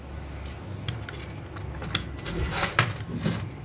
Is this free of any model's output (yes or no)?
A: yes